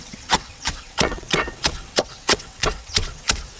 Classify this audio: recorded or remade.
remade